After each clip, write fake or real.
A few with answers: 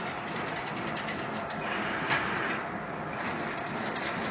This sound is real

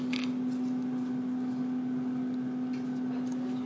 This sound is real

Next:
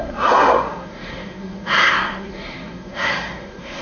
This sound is fake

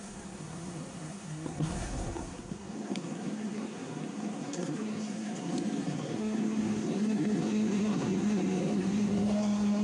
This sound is fake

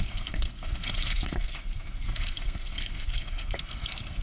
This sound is fake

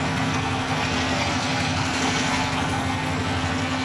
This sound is fake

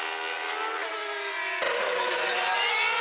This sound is real